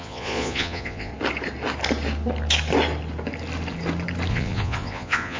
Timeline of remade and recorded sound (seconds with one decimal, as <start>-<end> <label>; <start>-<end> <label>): 0.0-1.1 remade; 1.1-4.3 recorded; 4.3-5.4 remade

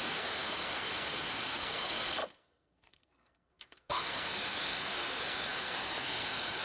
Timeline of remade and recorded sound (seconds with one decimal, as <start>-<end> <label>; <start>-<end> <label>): 0.0-6.6 remade

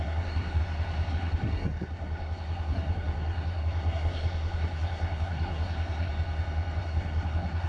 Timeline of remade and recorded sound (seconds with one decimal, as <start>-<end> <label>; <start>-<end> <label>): 0.0-0.6 remade; 0.6-1.1 recorded; 1.1-6.1 remade; 6.1-6.8 recorded; 6.8-7.7 remade

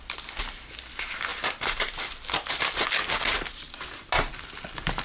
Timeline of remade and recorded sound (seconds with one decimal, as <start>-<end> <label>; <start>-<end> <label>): 0.0-5.0 recorded

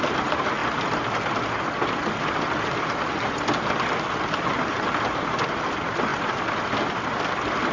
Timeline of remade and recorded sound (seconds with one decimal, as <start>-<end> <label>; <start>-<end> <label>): 0.0-7.7 recorded